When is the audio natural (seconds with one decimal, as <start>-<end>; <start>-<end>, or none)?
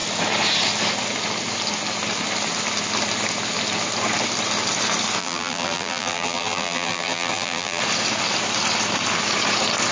0.0-5.2; 7.8-9.9